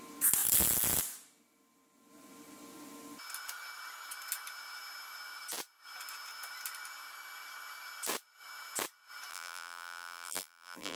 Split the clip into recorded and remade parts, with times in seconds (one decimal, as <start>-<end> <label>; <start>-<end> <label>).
0.0-9.3 recorded; 9.3-11.0 remade